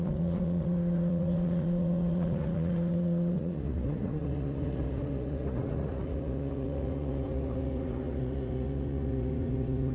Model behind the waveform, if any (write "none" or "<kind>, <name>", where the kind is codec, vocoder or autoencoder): vocoder, Vocos